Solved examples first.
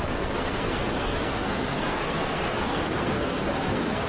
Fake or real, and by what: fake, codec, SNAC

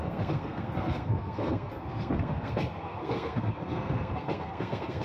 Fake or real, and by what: fake, codec, SNAC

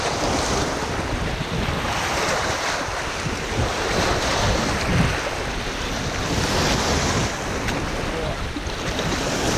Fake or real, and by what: real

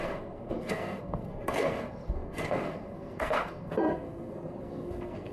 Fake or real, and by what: fake, codec, SNAC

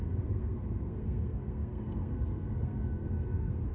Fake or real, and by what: fake, codec, SNAC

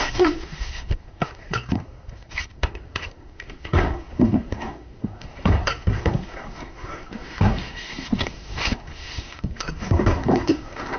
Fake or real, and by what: fake, codec, SNAC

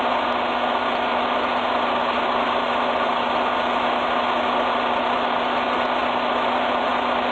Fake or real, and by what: real